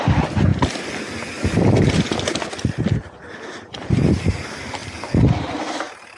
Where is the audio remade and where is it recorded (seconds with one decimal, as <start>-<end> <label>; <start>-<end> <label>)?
0.0-0.5 remade; 0.5-4.2 recorded; 4.2-4.8 remade; 4.8-5.4 recorded; 5.4-6.2 remade

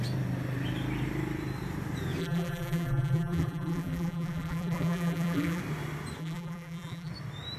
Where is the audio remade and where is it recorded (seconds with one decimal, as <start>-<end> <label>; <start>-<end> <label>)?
0.0-2.2 recorded; 2.2-5.6 remade; 5.6-6.2 recorded; 6.2-7.1 remade; 7.1-7.6 recorded